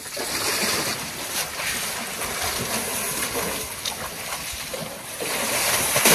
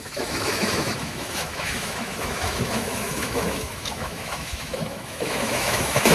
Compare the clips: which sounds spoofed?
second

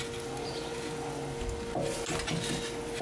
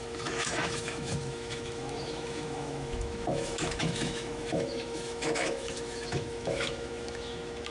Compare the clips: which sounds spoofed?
second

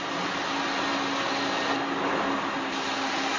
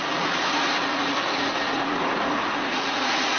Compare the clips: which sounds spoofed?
second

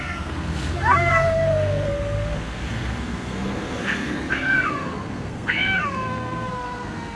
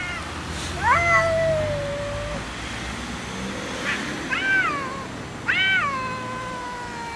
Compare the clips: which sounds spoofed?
first